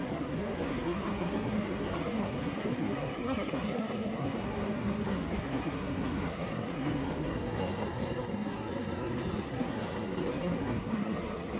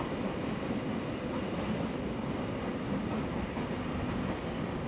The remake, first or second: first